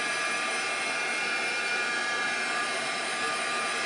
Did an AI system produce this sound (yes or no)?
yes